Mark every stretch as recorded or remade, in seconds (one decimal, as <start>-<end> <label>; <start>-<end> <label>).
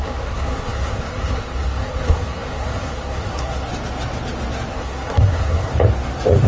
0.0-3.7 remade; 3.7-4.7 recorded; 4.7-5.7 remade; 5.7-6.5 recorded